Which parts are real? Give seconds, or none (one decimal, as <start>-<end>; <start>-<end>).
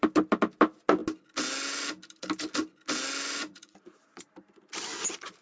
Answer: 0.0-3.4; 4.3-5.4